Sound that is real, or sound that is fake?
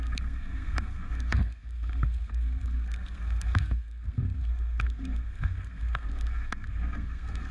fake